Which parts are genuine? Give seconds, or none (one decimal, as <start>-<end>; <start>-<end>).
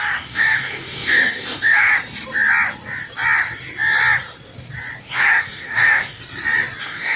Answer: 1.9-5.0; 6.2-6.8